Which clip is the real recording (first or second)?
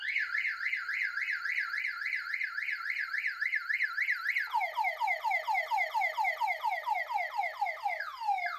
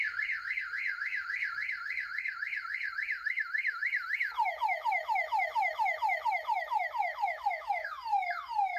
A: first